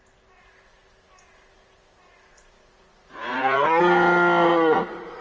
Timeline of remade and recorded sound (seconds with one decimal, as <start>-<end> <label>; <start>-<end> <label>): 0.0-2.3 recorded; 2.3-3.8 remade; 3.8-4.5 recorded; 4.5-5.2 remade